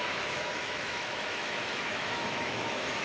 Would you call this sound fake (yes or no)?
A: yes